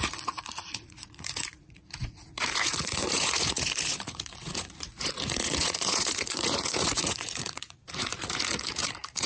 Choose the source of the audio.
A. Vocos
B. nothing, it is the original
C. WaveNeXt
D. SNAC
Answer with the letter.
A